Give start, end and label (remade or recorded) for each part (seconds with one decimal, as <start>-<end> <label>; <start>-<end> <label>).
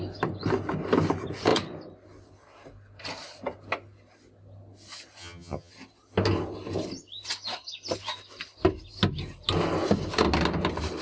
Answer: 0.0-5.2 recorded; 5.2-5.7 remade; 5.7-11.0 recorded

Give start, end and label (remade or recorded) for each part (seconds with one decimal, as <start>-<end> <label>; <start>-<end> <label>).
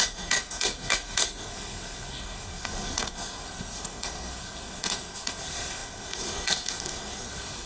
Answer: 0.0-7.7 remade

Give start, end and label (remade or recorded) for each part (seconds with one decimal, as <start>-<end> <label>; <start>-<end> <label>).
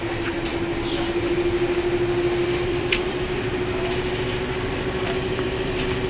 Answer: 0.0-0.5 recorded; 0.5-1.3 remade; 1.3-2.4 recorded; 2.4-6.1 remade